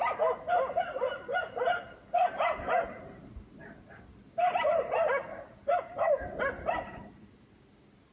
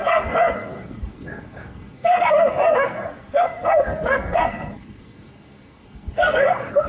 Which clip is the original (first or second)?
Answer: first